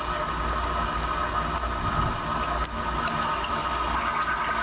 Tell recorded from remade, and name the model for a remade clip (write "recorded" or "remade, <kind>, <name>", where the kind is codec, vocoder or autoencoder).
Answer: recorded